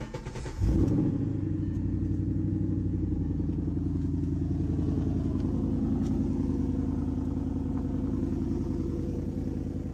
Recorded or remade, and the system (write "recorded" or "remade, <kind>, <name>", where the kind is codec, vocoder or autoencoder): remade, vocoder, Vocos